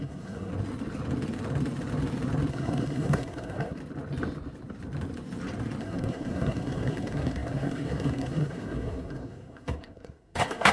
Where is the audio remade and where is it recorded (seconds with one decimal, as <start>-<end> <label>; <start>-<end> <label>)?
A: 0.0-0.5 remade; 0.5-2.5 recorded; 2.5-3.8 remade; 3.8-5.8 recorded; 5.8-10.7 remade